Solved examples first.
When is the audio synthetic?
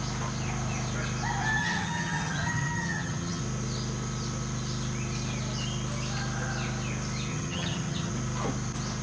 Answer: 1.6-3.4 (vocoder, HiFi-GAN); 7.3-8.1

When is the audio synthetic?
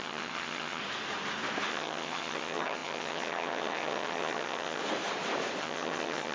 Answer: 0.0-0.8 (vocoder, HiFi-GAN); 1.7-4.8; 5.6-6.3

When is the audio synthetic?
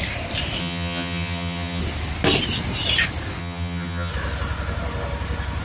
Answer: 0.6-1.8 (vocoder, HiFi-GAN); 3.4-4.1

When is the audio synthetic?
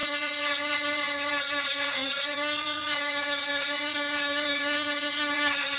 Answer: 0.0-5.8 (vocoder, HiFi-GAN)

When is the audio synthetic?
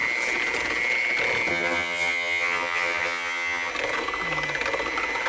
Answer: 1.5-3.7 (vocoder, HiFi-GAN)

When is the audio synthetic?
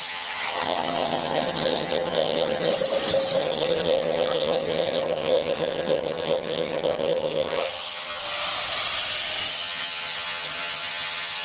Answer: 0.0-2.7 (vocoder, HiFi-GAN); 3.4-8.2; 9.5-11.4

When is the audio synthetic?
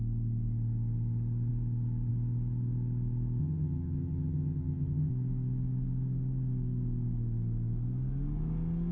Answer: 3.4-5.1 (vocoder, HiFi-GAN)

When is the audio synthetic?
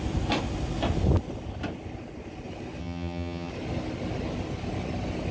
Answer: 2.8-3.5 (vocoder, HiFi-GAN)